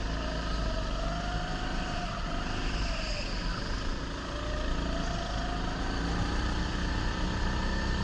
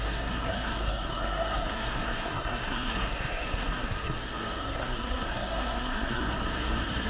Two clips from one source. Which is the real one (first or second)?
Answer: first